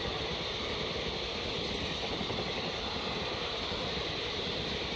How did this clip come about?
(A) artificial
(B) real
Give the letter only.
B